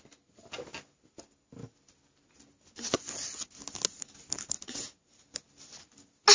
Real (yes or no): yes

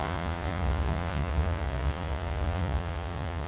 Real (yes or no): no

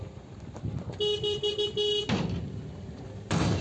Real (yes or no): yes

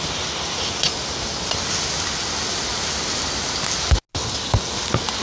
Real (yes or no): yes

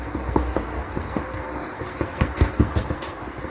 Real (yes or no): no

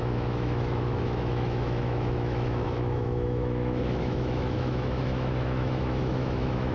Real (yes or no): no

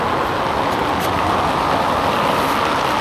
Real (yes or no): yes